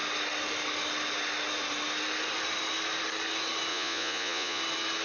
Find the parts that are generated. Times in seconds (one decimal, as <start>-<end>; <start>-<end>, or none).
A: 3.7-4.6